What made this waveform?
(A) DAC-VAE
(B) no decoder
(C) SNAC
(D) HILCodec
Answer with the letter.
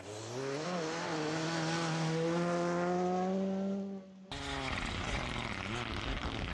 B